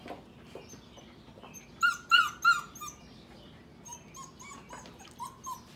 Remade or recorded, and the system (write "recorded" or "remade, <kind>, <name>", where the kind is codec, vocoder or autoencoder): recorded